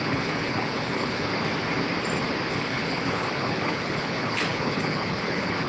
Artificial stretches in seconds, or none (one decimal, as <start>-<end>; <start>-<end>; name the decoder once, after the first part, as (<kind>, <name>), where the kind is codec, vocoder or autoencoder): 0.0-1.3 (codec, HILCodec); 2.5-5.7